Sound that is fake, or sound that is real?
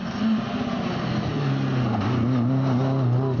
real